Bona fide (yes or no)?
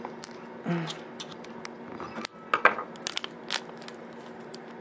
yes